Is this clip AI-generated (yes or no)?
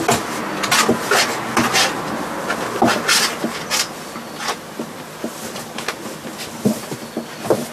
no